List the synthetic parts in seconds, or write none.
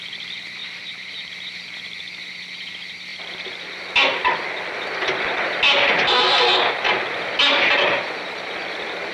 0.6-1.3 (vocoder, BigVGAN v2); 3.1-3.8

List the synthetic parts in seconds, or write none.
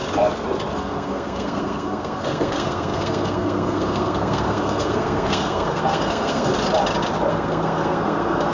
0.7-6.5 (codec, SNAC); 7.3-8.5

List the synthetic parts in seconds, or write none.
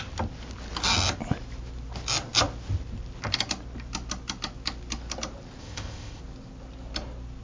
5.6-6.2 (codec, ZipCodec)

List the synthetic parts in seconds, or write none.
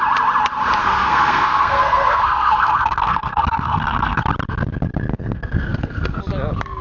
0.8-4.2 (codec, SNAC); 5.1-6.2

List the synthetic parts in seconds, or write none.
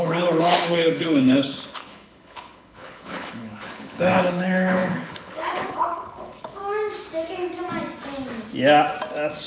0.0-6.6 (codec, HILCodec)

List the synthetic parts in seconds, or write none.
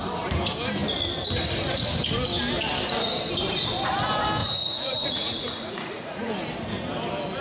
4.4-6.3 (vocoder, Vocos)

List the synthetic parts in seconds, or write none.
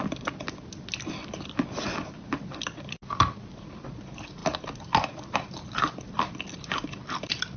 none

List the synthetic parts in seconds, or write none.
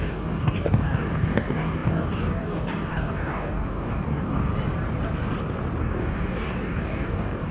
0.0-4.5 (codec, DAC); 5.8-7.5